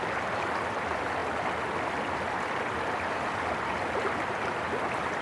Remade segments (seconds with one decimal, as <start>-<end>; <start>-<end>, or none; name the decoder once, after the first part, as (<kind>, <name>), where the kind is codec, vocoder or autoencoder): none